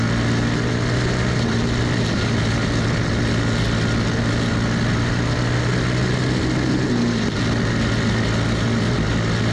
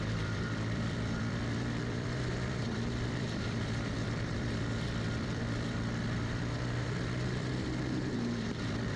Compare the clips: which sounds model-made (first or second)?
second